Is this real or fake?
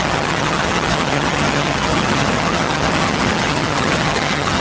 fake